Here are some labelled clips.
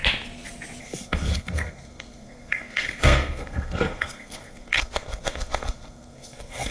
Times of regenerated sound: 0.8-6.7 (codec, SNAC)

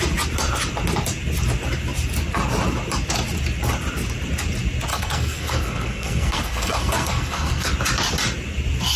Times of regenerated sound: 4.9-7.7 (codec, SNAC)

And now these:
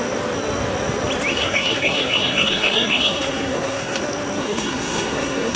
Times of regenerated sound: 1.3-4.0 (codec, SNAC); 4.4-5.6